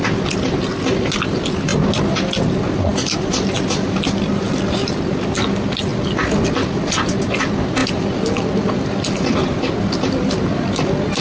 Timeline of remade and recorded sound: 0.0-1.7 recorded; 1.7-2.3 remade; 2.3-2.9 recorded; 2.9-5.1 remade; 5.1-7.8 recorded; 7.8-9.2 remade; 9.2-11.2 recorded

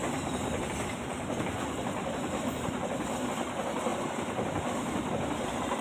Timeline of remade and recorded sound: 0.0-3.1 remade; 3.1-3.9 recorded; 3.9-5.1 remade; 5.1-5.8 recorded

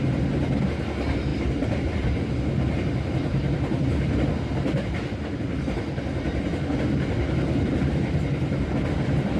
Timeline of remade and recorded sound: 0.0-1.3 recorded; 1.3-2.2 remade; 2.2-3.3 recorded; 3.3-4.3 remade; 4.3-9.4 recorded

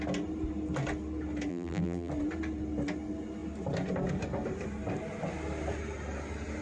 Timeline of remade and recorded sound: 0.0-1.5 recorded; 1.5-2.1 remade; 2.1-6.6 recorded

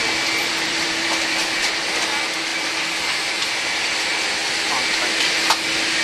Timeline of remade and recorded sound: 0.0-0.4 recorded; 0.4-1.7 remade; 1.7-6.0 recorded